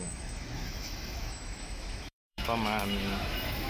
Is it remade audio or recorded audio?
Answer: remade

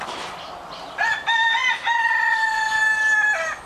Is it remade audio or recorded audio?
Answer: recorded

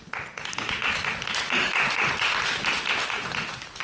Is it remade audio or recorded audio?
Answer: recorded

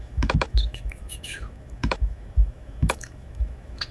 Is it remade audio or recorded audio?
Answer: remade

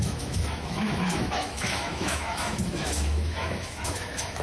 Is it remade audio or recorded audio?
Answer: remade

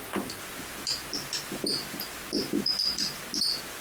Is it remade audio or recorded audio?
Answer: recorded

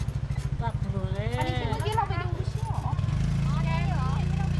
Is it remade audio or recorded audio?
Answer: recorded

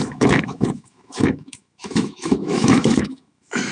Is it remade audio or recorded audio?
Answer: remade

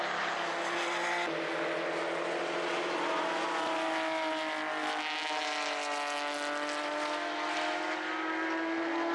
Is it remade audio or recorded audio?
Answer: recorded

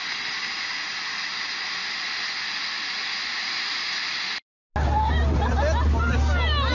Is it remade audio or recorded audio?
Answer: recorded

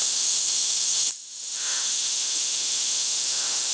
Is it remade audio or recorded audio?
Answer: remade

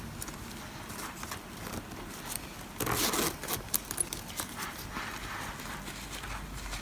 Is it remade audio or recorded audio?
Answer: recorded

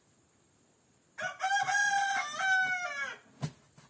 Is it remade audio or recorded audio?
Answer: recorded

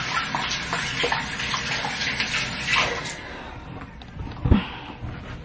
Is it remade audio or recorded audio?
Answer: recorded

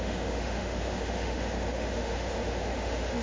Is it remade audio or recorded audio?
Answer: remade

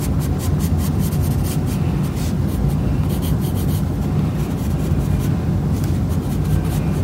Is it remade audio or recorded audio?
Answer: recorded